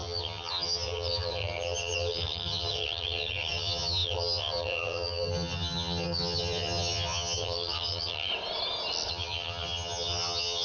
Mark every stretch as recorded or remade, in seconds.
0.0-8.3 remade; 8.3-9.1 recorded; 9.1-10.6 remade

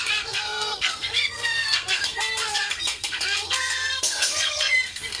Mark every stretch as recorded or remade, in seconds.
0.0-5.2 remade

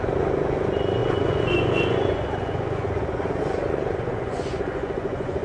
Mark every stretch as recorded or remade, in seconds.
0.0-5.4 remade

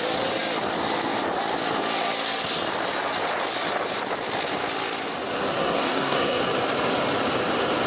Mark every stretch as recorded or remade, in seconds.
0.0-5.5 recorded; 5.5-6.4 remade; 6.4-7.9 recorded

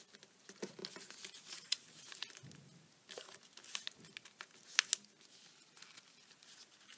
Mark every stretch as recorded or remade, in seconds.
0.0-7.0 recorded

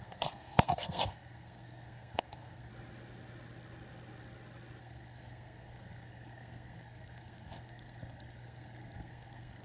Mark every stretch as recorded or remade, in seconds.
0.0-2.7 remade; 2.7-4.8 recorded; 4.8-9.6 remade